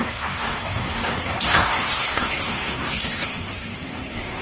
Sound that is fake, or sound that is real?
fake